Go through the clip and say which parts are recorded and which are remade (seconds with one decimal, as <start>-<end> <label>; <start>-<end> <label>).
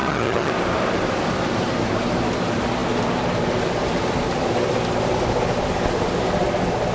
0.0-0.5 remade; 0.5-6.9 recorded